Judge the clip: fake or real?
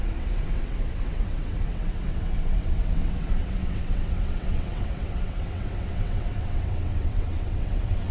fake